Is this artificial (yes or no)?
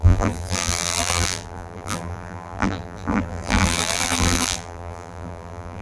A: yes